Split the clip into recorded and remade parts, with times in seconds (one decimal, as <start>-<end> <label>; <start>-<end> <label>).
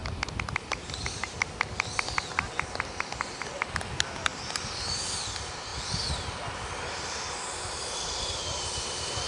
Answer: 0.0-9.3 recorded